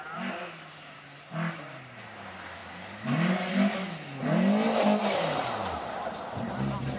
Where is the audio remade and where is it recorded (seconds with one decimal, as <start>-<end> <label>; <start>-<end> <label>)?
0.0-7.0 recorded